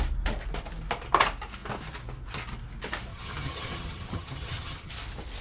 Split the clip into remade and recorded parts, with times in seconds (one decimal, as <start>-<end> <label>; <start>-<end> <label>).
0.0-3.1 recorded; 3.1-4.9 remade; 4.9-5.4 recorded